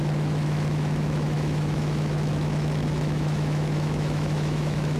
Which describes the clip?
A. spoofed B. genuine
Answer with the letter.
A